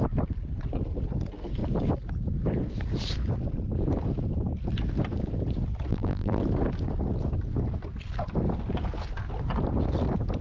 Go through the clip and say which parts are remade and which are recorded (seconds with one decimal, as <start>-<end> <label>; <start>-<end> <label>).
0.0-5.9 recorded; 5.9-6.4 remade; 6.4-10.4 recorded

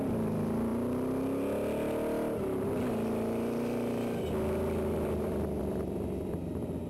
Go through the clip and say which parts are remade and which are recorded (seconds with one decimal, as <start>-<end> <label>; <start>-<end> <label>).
0.0-0.7 remade; 0.7-2.7 recorded; 2.7-6.9 remade

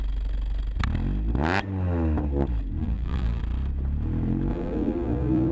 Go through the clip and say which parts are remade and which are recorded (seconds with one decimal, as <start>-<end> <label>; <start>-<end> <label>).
0.0-2.8 recorded; 2.8-3.4 remade; 3.4-4.5 recorded; 4.5-5.5 remade

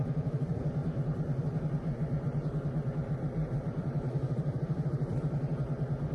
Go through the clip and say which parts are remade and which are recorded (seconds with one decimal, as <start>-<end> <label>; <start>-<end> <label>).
0.0-0.8 recorded; 0.8-1.4 remade; 1.4-1.8 recorded; 1.8-5.1 remade; 5.1-6.1 recorded

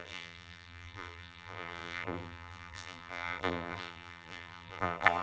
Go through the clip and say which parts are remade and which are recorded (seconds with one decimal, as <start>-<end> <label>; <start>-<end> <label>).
0.0-5.2 remade

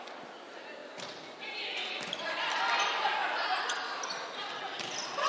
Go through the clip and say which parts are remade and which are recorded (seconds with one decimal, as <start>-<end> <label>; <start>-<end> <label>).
0.0-0.8 recorded; 0.8-2.0 remade; 2.0-5.3 recorded

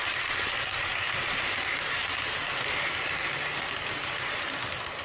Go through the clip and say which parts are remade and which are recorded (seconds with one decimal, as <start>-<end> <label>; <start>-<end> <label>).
0.0-5.0 recorded